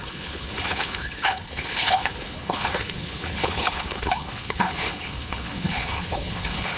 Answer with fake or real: fake